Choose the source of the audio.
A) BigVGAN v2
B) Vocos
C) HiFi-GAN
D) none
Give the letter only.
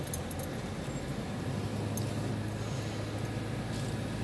D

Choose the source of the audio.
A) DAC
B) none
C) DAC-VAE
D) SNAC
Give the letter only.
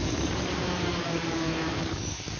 A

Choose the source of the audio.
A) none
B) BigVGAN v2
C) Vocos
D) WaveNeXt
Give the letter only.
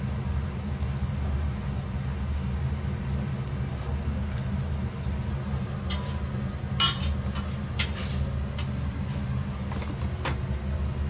A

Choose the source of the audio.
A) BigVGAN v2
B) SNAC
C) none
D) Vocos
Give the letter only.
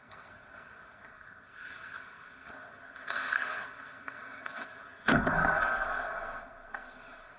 B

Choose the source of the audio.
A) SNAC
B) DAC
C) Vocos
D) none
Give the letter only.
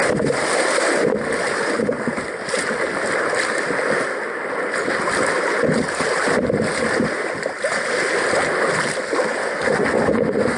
D